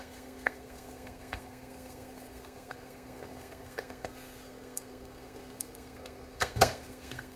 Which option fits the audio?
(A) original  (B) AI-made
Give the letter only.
B